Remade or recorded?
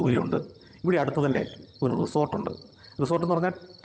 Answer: remade